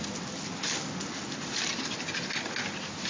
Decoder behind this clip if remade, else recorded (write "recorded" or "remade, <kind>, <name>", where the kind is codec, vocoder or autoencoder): recorded